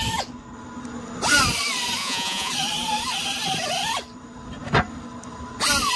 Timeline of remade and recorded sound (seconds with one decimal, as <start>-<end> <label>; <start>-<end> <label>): 0.0-2.0 recorded; 2.0-2.5 remade; 2.5-6.0 recorded